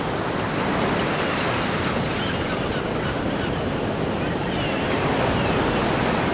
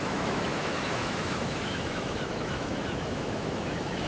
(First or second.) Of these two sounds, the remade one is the second